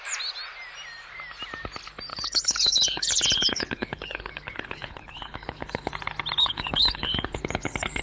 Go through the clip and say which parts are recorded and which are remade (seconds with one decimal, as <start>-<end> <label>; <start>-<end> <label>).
0.0-2.1 recorded; 2.1-5.9 remade; 5.9-6.4 recorded; 6.4-8.0 remade